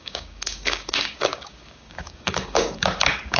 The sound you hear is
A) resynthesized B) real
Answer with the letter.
A